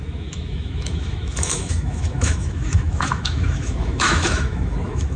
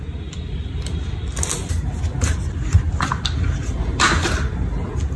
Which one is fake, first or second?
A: first